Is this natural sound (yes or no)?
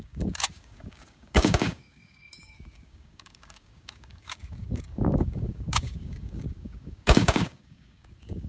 no